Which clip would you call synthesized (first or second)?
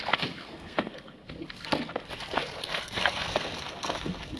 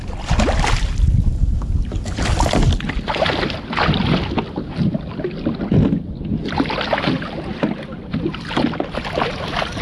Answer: first